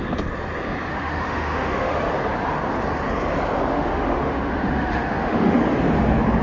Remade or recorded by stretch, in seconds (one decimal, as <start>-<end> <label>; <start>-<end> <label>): 0.0-0.9 recorded; 0.9-2.0 remade; 2.0-3.7 recorded; 3.7-5.6 remade; 5.6-6.4 recorded